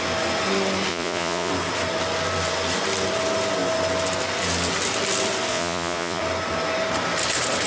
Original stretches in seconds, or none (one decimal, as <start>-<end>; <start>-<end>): 0.0-0.9; 1.5-5.5; 6.2-7.7

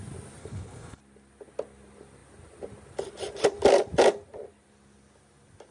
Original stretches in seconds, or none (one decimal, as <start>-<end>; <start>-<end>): 0.0-0.4; 1.0-5.7

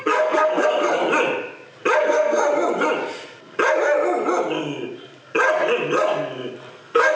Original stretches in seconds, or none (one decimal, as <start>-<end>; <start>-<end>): 1.0-2.0; 2.4-6.7

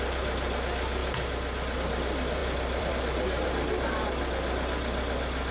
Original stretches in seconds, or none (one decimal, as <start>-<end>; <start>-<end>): 0.0-2.4; 2.9-5.5

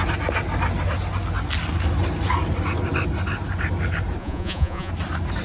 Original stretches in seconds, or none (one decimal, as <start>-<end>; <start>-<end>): 0.0-4.2; 4.9-5.4

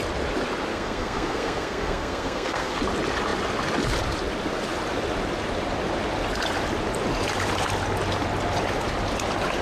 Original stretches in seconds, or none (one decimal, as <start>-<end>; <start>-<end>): 0.0-0.7; 2.8-9.6

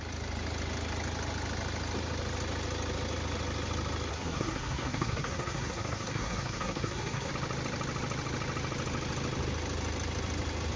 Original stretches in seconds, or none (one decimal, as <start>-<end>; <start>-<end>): 0.0-4.1; 7.3-10.8

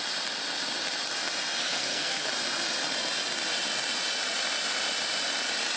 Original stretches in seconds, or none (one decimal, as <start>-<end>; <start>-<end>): 0.0-1.6; 2.3-5.8